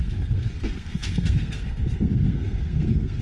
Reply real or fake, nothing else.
fake